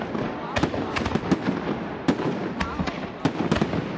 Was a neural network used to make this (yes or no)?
no